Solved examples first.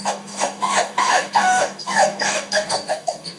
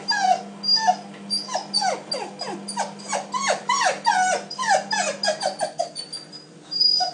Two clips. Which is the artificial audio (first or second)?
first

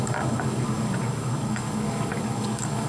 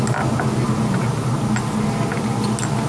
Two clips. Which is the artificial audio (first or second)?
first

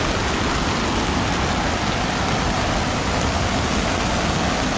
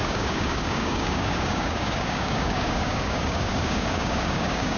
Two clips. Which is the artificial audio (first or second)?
second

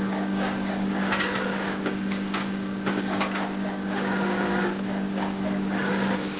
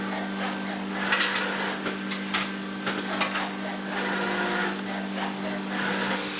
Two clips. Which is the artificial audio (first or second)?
first